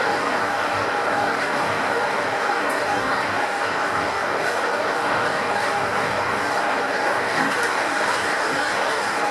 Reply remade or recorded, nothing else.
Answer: remade